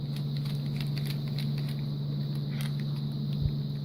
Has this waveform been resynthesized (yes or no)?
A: no